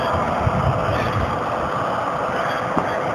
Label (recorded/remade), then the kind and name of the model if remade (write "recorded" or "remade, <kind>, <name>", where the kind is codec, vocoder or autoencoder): recorded